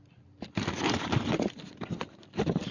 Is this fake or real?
real